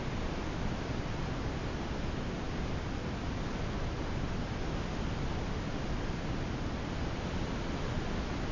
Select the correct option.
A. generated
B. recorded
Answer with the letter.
B